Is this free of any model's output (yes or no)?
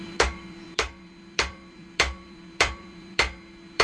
no